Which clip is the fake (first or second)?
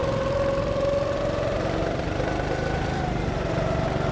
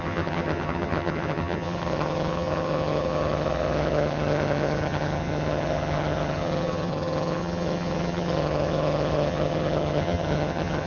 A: second